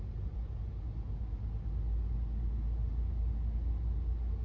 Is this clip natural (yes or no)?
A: yes